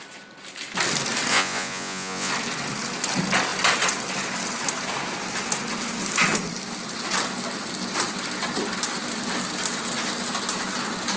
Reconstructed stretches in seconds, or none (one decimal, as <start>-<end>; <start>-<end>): 1.3-2.3